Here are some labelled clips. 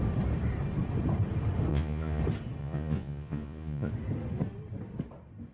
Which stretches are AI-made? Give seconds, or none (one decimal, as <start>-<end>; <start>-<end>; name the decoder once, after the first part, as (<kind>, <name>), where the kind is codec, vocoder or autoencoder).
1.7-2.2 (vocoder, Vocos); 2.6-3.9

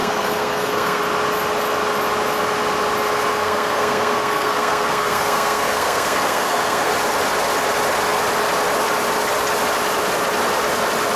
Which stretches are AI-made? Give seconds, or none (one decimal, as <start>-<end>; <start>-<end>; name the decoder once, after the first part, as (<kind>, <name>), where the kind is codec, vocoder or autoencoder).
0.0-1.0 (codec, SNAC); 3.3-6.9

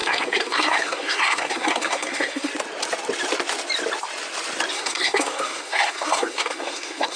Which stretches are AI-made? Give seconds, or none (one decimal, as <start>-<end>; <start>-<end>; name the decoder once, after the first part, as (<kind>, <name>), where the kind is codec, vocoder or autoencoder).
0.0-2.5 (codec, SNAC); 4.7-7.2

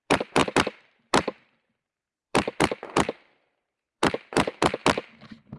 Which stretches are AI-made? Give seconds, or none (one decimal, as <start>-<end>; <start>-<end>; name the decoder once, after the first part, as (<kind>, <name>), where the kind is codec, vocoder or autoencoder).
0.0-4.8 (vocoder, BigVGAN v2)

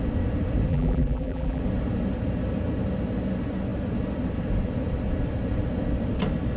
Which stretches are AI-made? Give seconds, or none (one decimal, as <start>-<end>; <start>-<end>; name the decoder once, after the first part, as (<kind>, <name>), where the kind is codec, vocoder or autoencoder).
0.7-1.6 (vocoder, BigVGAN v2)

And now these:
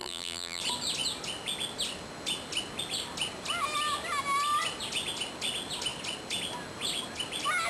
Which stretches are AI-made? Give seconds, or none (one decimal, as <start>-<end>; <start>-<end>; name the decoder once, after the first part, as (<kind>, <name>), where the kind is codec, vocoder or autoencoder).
0.0-0.6 (vocoder, BigVGAN v2)